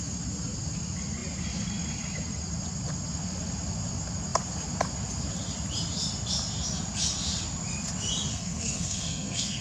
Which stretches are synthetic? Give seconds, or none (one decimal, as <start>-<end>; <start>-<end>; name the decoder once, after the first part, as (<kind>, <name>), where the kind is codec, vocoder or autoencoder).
8.3-9.6 (codec, SNAC)

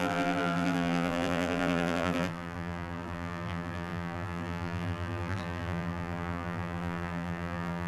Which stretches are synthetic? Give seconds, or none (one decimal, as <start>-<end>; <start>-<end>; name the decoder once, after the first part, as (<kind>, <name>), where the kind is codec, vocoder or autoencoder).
0.0-7.9 (vocoder, BigVGAN v2)

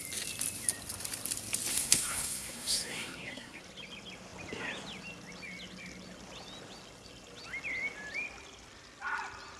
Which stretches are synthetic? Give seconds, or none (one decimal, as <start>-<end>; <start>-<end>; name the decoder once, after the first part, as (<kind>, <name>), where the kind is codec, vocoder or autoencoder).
1.7-3.6 (codec, SNAC)

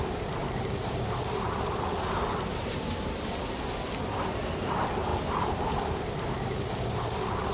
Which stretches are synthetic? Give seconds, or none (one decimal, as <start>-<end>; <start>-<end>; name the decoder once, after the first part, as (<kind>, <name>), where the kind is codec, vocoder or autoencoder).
0.4-2.0 (vocoder, BigVGAN v2); 2.5-3.4; 5.1-6.0

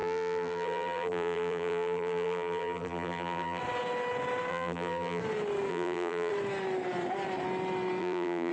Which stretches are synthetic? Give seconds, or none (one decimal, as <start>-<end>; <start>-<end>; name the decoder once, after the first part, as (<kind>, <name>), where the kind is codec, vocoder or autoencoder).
0.0-3.6 (vocoder, BigVGAN v2); 4.5-5.2; 5.7-6.3; 8.0-8.5

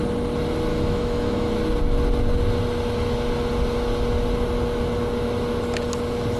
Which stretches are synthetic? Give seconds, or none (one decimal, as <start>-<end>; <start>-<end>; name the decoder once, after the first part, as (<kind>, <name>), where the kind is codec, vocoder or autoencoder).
0.7-1.5 (autoencoder, DAC-VAE)

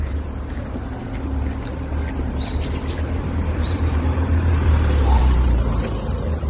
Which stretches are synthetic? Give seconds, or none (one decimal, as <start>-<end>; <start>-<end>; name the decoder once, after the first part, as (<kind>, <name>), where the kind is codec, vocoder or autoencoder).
0.0-1.0 (vocoder, BigVGAN v2); 2.2-6.5

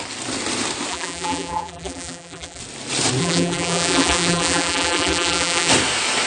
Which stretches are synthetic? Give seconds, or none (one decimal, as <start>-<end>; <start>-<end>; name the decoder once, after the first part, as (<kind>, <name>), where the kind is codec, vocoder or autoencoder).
0.9-2.6 (vocoder, BigVGAN v2); 3.2-5.7